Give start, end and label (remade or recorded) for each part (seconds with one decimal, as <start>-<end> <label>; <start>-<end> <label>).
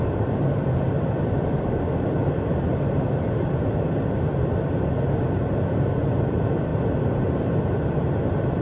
0.0-8.6 recorded